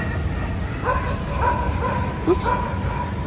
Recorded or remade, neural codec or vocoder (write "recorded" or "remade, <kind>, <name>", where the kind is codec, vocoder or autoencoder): recorded